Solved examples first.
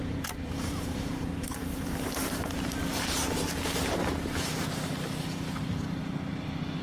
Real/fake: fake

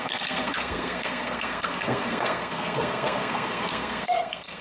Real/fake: fake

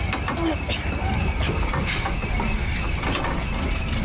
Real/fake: real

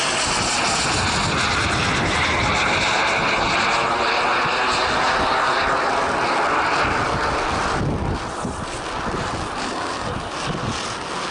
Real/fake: real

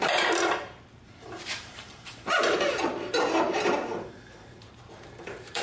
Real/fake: fake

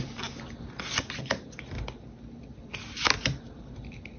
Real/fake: real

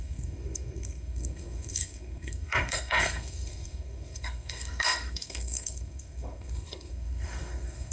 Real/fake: fake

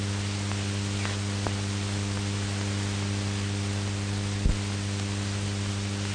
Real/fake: real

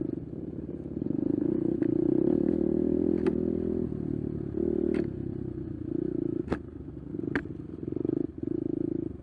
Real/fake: real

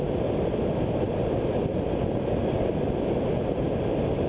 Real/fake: real